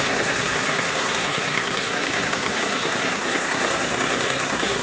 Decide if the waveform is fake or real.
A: fake